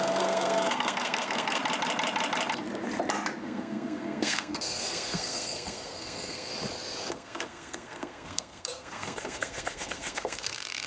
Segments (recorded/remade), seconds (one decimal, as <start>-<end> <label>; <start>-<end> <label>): 0.0-1.6 remade; 1.6-3.4 recorded; 3.4-6.5 remade; 6.5-7.1 recorded; 7.1-10.9 remade